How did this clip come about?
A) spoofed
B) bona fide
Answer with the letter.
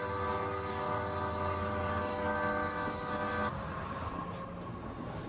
B